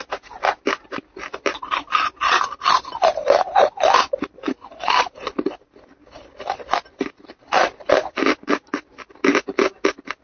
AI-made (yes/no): no